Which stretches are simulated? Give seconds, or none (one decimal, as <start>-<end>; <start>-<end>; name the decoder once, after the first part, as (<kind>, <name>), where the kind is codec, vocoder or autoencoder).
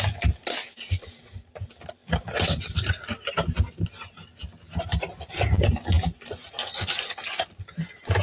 none